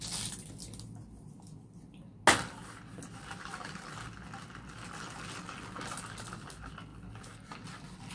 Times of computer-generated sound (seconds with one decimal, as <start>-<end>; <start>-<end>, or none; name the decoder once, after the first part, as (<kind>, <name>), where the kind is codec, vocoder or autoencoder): none